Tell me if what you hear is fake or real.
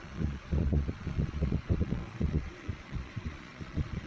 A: fake